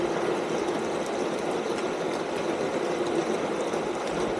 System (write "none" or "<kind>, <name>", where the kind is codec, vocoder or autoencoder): none